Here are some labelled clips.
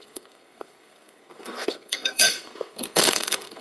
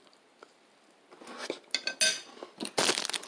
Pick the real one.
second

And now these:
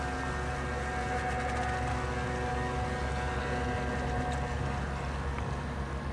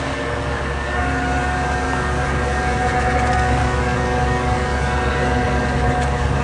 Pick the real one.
first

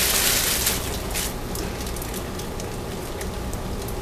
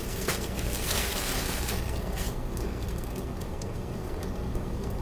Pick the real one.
first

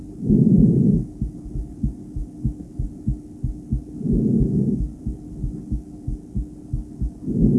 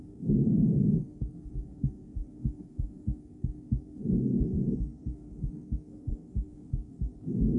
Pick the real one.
first